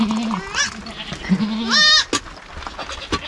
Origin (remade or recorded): recorded